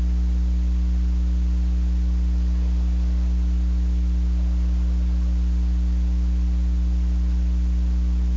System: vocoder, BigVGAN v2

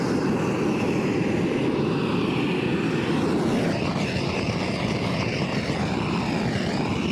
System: none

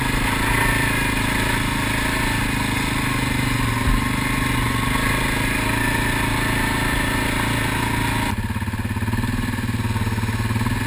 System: none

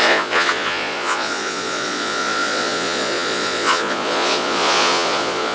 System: vocoder, Vocos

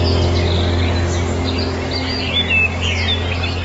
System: none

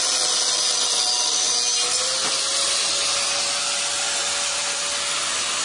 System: none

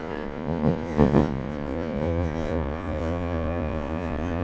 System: vocoder, Vocos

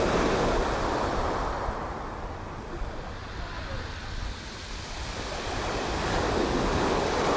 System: none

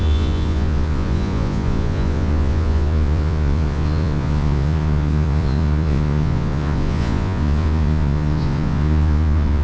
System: vocoder, Vocos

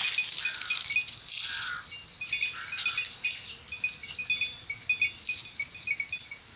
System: none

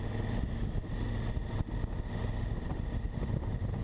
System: none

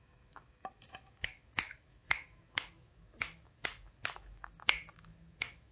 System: autoencoder, DAC-VAE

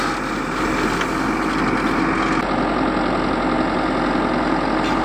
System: none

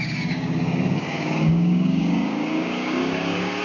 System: codec, DAC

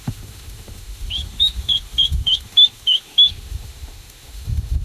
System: autoencoder, DAC-VAE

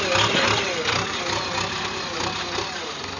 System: none